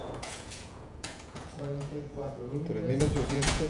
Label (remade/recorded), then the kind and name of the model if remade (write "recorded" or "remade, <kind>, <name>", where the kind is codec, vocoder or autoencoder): remade, vocoder, Vocos